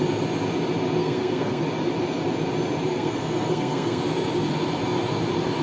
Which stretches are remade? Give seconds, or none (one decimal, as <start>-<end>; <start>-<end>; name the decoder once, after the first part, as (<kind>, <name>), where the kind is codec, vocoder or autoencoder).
1.0-1.6 (codec, SNAC); 2.9-4.0